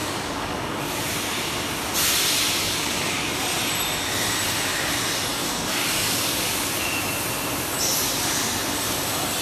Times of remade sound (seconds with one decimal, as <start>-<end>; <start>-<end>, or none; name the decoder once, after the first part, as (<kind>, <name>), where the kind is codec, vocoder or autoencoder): 0.0-0.9 (codec, DAC); 2.6-3.4; 5.3-6.8